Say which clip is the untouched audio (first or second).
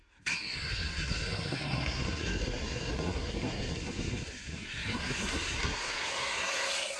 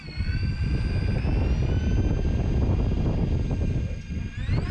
second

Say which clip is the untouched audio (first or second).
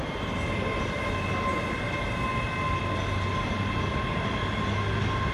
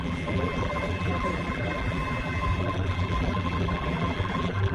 first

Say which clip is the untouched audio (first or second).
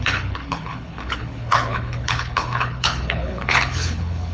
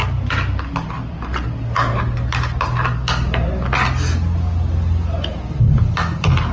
second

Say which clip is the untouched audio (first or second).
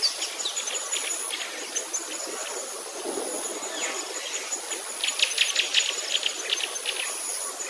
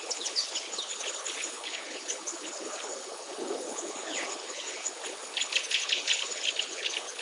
first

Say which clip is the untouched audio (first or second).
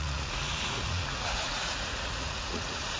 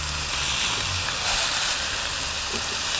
second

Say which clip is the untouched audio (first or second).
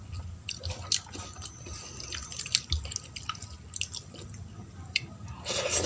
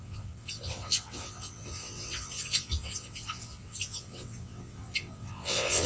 first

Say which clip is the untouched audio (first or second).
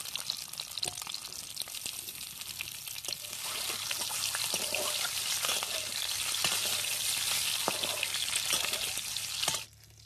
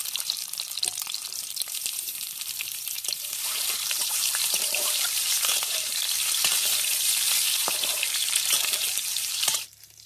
first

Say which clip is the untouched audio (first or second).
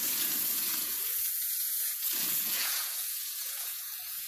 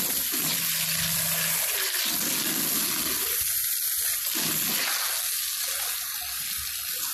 second